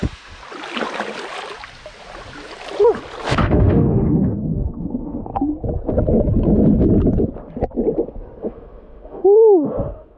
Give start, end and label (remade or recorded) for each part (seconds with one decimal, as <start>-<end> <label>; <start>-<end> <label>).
0.0-0.4 remade; 0.4-3.3 recorded; 3.3-5.3 remade; 5.3-8.4 recorded; 8.4-10.2 remade